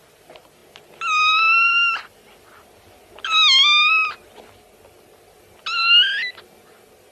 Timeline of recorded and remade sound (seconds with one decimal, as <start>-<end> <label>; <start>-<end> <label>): 0.0-7.1 recorded